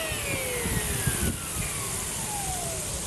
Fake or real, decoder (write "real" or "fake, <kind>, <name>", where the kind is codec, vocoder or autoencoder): real